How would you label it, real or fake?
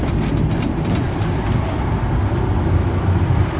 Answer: real